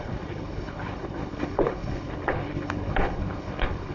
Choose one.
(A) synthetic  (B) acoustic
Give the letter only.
A